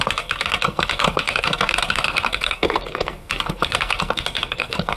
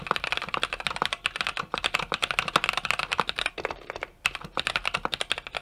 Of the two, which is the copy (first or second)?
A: first